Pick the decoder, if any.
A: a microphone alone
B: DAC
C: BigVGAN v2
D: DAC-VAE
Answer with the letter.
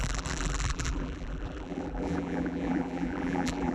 C